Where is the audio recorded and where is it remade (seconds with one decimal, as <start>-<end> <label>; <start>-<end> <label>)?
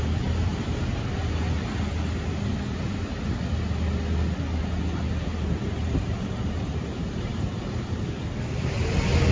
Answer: 0.0-1.2 remade; 1.2-5.4 recorded; 5.4-9.3 remade